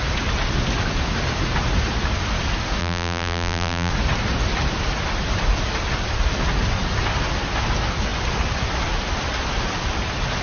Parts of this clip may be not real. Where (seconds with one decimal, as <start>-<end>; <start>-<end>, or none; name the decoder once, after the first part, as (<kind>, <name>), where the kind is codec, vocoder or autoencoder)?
2.8-3.9 (vocoder, BigVGAN v2)